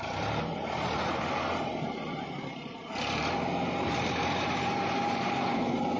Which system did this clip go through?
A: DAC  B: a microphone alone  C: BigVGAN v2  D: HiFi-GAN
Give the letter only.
C